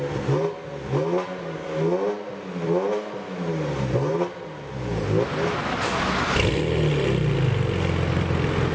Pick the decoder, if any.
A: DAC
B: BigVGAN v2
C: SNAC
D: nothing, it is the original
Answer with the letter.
D